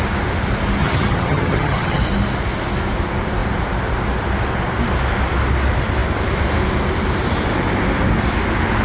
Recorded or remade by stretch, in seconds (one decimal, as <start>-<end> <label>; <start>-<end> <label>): 0.0-0.8 recorded; 0.8-2.0 remade; 2.0-8.8 recorded